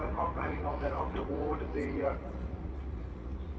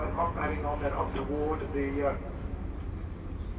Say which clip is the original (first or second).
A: second